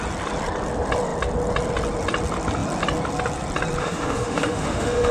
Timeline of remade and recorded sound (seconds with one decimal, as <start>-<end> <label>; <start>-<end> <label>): 0.0-3.8 recorded; 3.8-5.1 remade